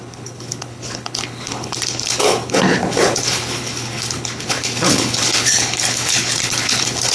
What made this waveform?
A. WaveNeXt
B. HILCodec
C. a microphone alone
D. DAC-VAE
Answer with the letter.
B